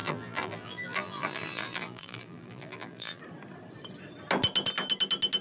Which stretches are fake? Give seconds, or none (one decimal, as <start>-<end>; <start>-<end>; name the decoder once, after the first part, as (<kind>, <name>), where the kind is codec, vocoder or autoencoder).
0.0-3.2 (vocoder, BigVGAN v2)